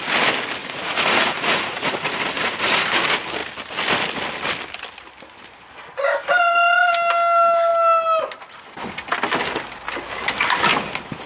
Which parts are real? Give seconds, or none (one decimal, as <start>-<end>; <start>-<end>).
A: 0.0-0.6; 2.9-11.3